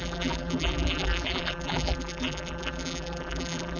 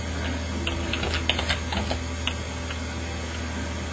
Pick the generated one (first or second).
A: first